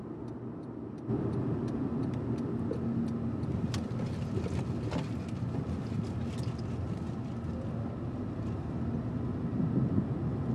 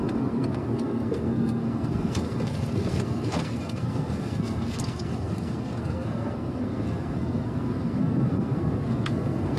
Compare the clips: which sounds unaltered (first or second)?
first